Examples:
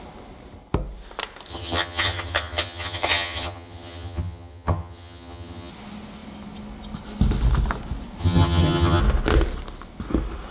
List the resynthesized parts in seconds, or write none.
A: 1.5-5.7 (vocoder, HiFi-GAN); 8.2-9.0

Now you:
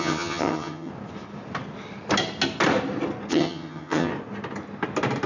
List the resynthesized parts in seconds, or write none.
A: 0.0-0.9 (vocoder, HiFi-GAN); 3.3-4.1

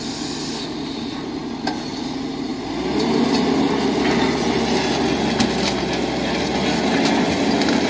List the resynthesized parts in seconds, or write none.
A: none

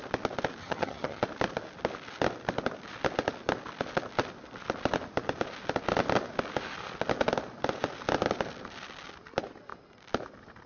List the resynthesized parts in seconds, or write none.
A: 0.6-1.2 (vocoder, HiFi-GAN)